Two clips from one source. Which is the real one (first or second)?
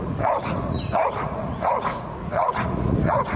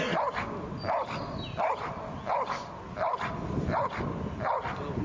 second